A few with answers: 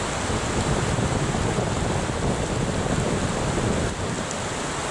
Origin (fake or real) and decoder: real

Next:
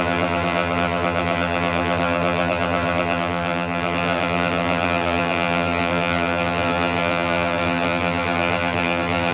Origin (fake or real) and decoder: fake, vocoder, BigVGAN v2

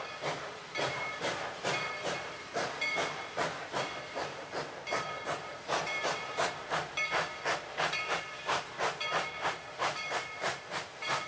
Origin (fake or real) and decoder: fake, vocoder, BigVGAN v2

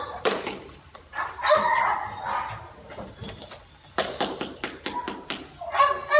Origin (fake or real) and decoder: real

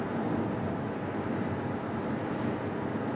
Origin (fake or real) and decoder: real